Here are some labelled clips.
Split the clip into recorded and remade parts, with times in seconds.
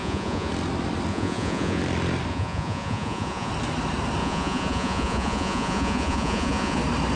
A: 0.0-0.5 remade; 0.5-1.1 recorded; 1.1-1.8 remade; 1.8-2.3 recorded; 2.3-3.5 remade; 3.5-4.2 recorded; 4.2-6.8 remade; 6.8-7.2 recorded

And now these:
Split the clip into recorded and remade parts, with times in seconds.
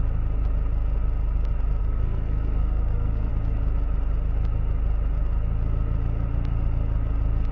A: 0.0-1.8 recorded; 1.8-3.3 remade; 3.3-7.5 recorded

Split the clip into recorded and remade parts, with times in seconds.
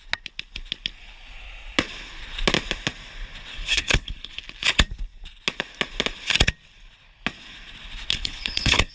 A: 0.0-3.5 recorded; 3.5-4.4 remade; 4.4-8.1 recorded; 8.1-8.9 remade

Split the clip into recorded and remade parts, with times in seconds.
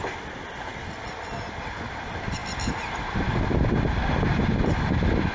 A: 0.0-5.3 remade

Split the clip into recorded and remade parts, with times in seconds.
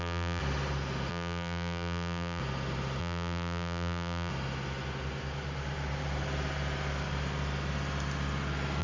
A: 0.0-0.4 remade; 0.4-1.1 recorded; 1.1-2.4 remade; 2.4-3.0 recorded; 3.0-4.3 remade; 4.3-8.8 recorded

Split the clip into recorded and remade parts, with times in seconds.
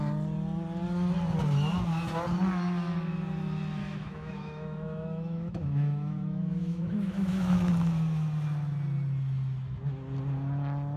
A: 0.0-3.8 recorded; 3.8-7.7 remade; 7.7-11.0 recorded